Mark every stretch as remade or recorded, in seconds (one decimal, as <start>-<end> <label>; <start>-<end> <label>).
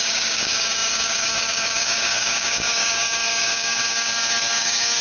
0.0-5.0 remade